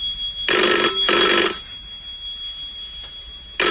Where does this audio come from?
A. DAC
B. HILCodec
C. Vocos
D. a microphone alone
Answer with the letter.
D